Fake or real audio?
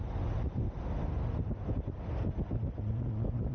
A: real